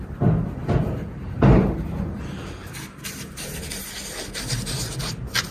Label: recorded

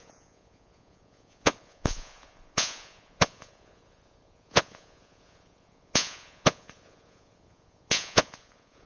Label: remade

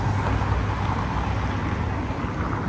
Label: recorded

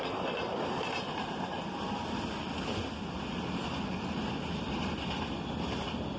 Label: recorded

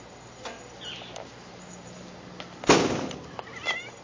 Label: recorded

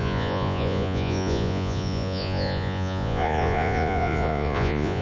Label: remade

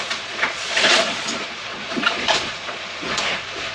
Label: remade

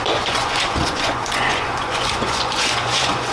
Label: remade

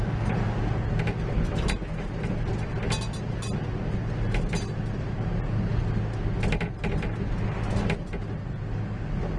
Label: recorded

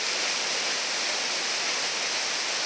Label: recorded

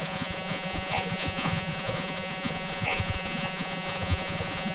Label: remade